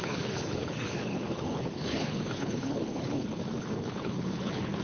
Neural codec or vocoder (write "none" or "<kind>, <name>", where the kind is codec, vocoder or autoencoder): codec, HILCodec